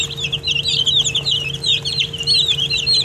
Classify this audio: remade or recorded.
recorded